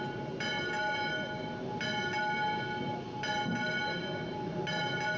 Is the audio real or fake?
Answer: real